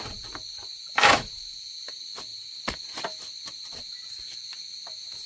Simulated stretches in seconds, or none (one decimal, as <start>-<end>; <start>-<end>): 0.7-1.7